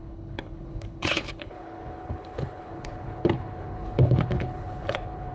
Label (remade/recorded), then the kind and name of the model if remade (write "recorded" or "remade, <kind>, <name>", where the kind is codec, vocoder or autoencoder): remade, codec, HILCodec